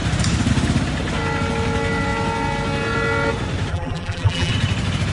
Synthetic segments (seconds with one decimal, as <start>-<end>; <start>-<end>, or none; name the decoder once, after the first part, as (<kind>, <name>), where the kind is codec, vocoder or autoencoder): 3.7-4.5 (vocoder, BigVGAN v2)